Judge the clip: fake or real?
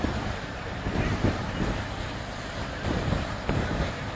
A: fake